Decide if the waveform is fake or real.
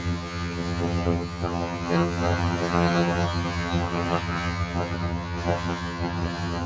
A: fake